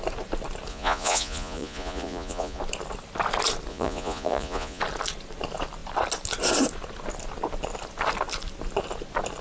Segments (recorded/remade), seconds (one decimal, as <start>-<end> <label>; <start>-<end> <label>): 0.0-0.7 recorded; 0.7-2.6 remade; 2.6-3.7 recorded; 3.7-4.8 remade; 4.8-9.4 recorded